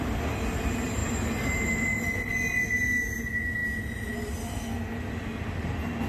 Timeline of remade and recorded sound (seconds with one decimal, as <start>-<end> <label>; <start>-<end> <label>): 0.0-1.0 recorded; 1.0-1.8 remade; 1.8-6.1 recorded